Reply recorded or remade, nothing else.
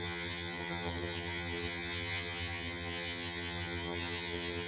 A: remade